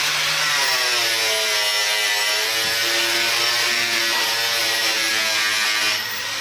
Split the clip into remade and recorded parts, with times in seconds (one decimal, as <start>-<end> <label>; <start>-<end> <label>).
0.0-2.8 recorded; 2.8-4.0 remade; 4.0-4.6 recorded; 4.6-5.1 remade; 5.1-6.4 recorded